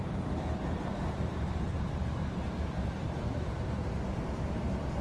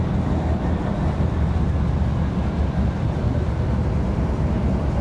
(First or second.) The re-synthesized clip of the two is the first